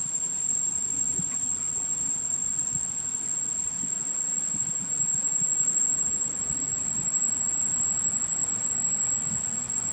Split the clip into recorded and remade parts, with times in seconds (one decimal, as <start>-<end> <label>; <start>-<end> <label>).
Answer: 0.0-9.9 recorded